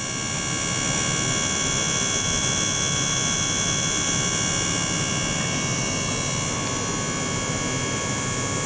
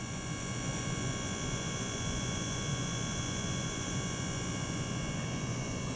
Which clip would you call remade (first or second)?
second